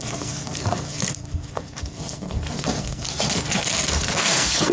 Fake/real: fake